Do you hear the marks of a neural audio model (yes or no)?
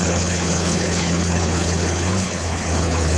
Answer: yes